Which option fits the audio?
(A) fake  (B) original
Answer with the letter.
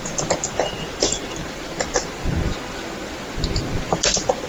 B